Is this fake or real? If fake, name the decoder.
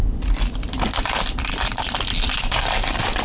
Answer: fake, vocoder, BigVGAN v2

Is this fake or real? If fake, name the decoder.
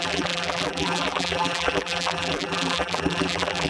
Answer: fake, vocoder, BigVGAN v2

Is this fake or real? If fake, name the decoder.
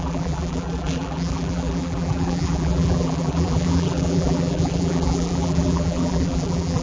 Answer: fake, vocoder, BigVGAN v2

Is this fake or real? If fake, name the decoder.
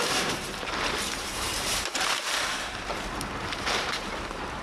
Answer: fake, vocoder, BigVGAN v2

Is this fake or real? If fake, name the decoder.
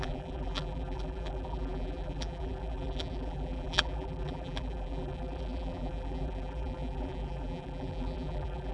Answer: fake, vocoder, BigVGAN v2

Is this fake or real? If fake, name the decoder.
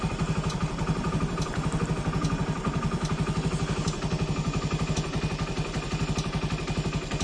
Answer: real